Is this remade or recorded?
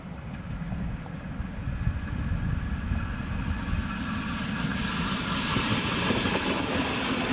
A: recorded